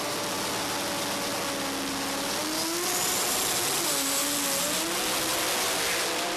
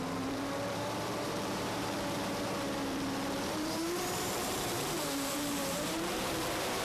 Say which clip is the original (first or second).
first